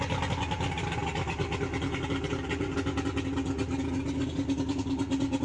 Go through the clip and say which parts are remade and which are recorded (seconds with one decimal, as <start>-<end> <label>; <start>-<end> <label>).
0.0-5.4 recorded